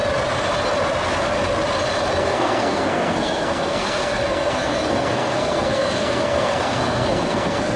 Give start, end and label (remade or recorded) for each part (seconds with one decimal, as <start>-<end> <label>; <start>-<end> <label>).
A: 0.0-2.2 recorded; 2.2-7.8 remade